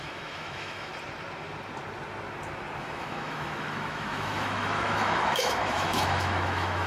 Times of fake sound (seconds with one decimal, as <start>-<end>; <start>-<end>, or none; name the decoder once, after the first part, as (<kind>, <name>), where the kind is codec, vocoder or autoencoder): 0.0-0.9 (autoencoder, DAC-VAE); 2.8-6.9